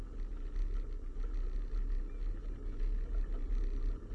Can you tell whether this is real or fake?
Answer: real